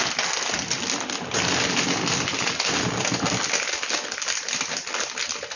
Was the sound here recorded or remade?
recorded